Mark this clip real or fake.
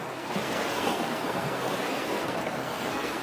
fake